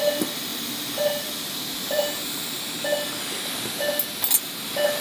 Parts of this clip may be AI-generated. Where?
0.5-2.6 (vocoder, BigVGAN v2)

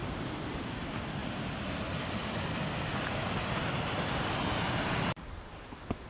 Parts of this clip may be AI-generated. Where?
0.7-1.2 (vocoder, BigVGAN v2); 4.9-6.1

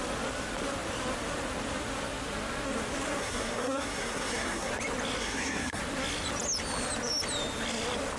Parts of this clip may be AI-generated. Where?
3.2-4.7 (codec, SNAC); 5.2-5.8